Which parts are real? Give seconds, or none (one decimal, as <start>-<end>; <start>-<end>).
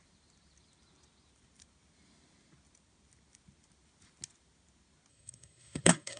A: 0.0-5.1